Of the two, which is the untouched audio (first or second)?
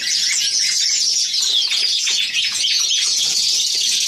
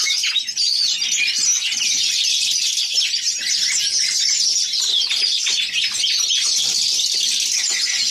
second